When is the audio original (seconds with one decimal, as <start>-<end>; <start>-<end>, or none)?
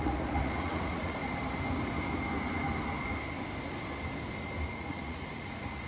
1.2-4.7